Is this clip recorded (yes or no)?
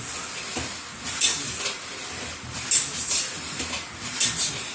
yes